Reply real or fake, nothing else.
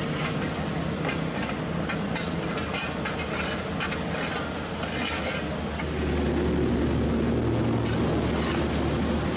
real